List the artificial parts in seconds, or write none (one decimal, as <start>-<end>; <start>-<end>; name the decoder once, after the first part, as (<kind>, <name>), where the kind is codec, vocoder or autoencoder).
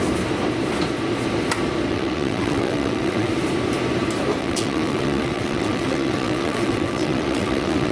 1.9-3.3 (vocoder, WaveNeXt); 4.4-7.9